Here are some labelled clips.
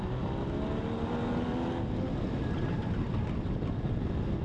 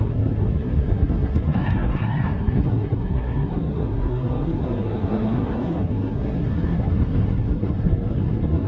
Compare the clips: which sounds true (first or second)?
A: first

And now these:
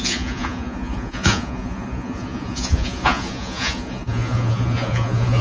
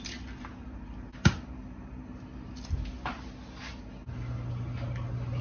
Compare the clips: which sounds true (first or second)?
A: second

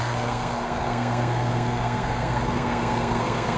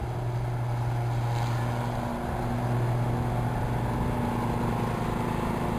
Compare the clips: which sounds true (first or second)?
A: second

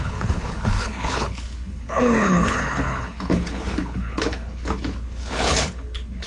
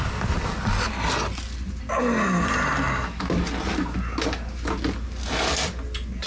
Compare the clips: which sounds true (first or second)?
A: second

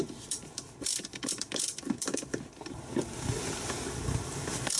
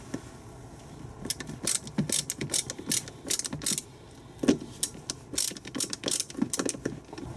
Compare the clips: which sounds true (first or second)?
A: second